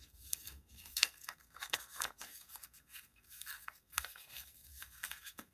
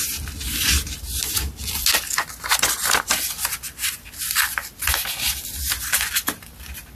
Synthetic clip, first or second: first